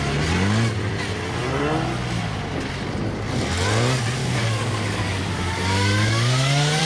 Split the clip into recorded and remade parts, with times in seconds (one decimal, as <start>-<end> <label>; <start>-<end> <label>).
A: 0.0-4.2 recorded; 4.2-6.8 remade